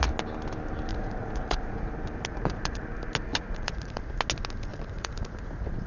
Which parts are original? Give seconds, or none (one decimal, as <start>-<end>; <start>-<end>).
0.0-0.9; 1.9-2.3; 2.8-3.3; 4.0-4.7